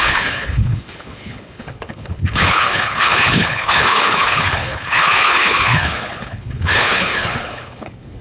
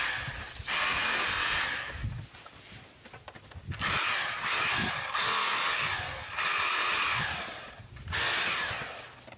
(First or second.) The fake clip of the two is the first